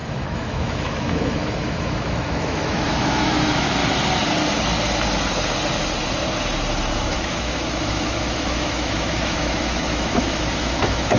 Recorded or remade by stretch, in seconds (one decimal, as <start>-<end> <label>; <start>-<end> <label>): 0.0-3.8 remade; 3.8-7.0 recorded; 7.0-11.2 remade